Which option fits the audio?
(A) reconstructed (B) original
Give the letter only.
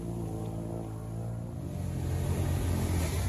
B